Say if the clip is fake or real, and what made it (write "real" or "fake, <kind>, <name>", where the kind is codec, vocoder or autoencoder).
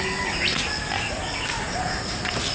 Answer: real